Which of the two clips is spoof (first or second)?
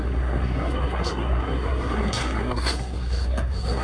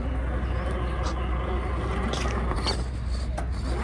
first